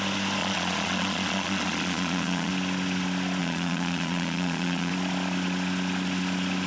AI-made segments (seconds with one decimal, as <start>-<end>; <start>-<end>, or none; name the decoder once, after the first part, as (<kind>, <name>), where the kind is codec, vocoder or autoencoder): 0.4-2.5 (vocoder, Vocos); 3.4-4.9